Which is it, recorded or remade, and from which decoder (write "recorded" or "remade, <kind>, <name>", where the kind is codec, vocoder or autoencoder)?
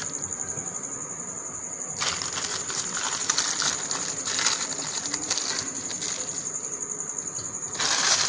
recorded